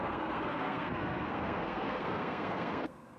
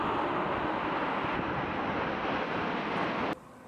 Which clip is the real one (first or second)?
second